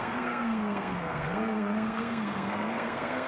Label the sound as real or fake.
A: fake